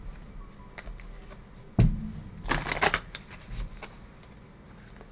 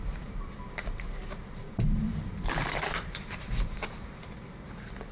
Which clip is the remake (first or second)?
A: second